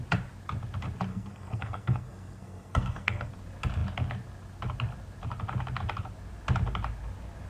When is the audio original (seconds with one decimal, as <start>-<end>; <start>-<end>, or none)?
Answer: 0.0-1.1; 3.3-7.5